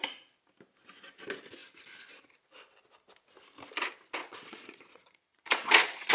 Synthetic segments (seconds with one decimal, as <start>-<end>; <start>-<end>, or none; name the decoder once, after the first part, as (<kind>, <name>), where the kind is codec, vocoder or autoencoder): 4.2-6.1 (vocoder, Vocos)